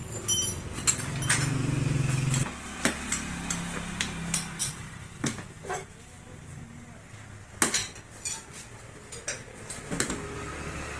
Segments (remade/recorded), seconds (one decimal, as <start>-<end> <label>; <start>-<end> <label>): 0.0-4.6 recorded; 4.6-6.6 remade; 6.6-11.0 recorded